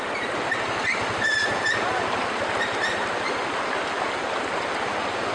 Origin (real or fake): real